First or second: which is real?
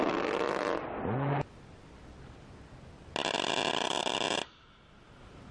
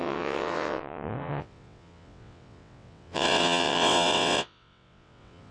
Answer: first